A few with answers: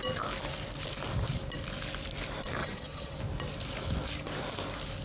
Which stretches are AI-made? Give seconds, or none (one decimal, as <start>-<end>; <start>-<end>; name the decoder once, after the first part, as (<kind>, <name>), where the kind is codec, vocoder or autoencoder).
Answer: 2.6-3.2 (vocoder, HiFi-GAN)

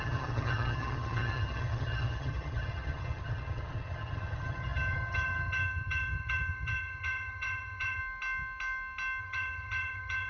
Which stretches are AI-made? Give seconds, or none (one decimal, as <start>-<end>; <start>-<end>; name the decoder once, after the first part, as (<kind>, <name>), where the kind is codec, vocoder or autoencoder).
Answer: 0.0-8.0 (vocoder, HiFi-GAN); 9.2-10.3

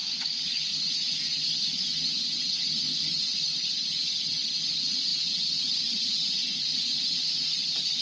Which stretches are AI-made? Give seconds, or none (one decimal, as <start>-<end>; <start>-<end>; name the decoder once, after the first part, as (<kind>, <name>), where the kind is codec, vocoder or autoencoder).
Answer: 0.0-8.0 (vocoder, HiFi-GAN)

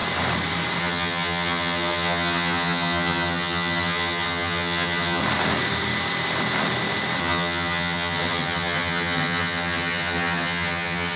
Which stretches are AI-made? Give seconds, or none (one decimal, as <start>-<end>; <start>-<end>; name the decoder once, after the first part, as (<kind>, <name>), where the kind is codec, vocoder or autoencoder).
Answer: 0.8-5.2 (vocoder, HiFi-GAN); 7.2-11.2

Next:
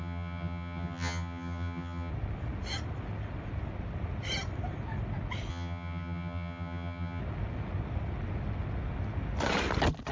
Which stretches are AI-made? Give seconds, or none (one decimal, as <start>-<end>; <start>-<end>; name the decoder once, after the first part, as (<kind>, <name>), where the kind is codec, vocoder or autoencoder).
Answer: 0.0-2.1 (vocoder, HiFi-GAN); 5.5-7.2

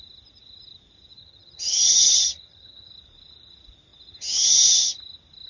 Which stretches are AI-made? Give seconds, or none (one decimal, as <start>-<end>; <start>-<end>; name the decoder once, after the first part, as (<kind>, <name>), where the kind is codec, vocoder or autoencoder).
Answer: 1.2-2.9 (vocoder, HiFi-GAN)

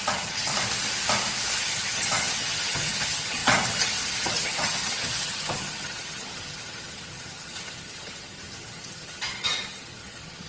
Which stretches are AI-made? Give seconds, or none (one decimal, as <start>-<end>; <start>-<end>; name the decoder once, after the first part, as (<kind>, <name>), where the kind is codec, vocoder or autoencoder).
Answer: 0.0-0.5 (vocoder, HiFi-GAN); 1.6-10.5